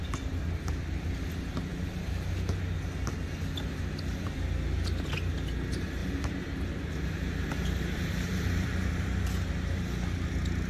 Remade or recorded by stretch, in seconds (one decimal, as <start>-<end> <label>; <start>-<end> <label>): 0.0-6.0 recorded; 6.0-9.8 remade; 9.8-10.7 recorded